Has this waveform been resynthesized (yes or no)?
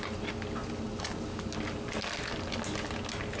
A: no